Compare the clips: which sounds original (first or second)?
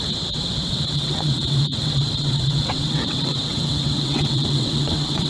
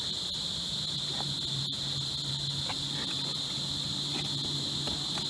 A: second